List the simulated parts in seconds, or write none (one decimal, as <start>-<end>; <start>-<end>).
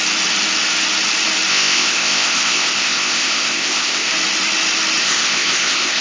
1.5-4.1; 5.0-6.0